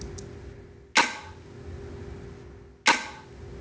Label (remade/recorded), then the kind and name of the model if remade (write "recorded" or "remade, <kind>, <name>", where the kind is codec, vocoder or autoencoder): recorded